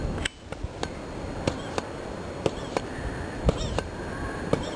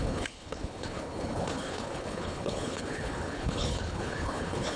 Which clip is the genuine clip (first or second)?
first